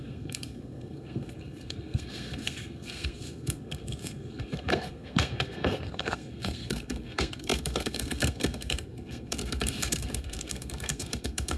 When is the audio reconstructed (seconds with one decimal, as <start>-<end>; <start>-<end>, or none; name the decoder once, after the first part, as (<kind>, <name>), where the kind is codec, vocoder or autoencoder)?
0.0-11.6 (codec, SNAC)

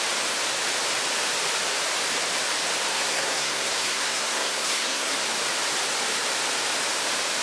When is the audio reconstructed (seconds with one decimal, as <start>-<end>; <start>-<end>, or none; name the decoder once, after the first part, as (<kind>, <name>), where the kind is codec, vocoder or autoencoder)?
2.9-5.1 (codec, SNAC)

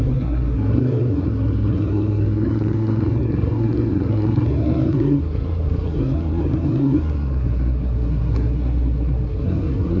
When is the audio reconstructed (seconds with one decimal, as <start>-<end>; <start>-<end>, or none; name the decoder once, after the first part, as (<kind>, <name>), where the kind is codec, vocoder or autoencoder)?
0.0-10.0 (codec, SNAC)

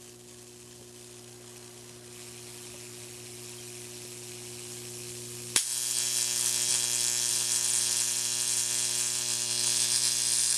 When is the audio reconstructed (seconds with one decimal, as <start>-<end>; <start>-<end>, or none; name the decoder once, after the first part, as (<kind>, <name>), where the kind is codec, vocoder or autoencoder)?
none

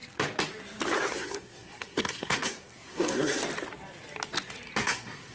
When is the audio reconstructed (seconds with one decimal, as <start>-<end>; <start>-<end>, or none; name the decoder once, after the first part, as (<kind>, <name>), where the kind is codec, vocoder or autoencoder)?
1.1-3.4 (codec, SNAC); 4.8-5.3

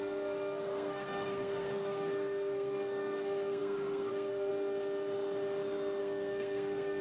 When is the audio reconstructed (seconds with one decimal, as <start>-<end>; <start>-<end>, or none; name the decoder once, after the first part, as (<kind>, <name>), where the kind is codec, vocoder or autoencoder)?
0.0-4.5 (codec, SNAC); 6.0-7.0

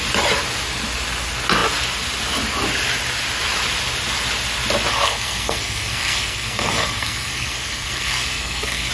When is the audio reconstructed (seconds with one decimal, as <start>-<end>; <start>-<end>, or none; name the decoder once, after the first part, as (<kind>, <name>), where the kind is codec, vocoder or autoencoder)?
4.9-8.9 (codec, SNAC)

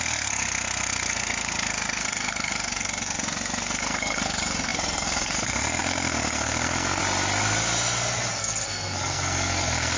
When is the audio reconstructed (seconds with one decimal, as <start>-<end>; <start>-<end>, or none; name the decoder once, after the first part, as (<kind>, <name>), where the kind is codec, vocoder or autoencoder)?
0.0-7.0 (codec, SNAC); 8.3-10.0